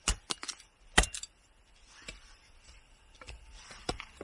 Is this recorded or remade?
recorded